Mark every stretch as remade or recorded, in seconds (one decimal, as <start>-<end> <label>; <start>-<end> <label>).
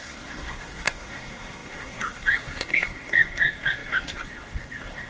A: 0.0-5.1 remade